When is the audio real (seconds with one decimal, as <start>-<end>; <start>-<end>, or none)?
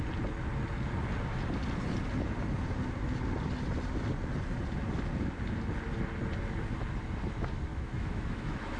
0.0-7.7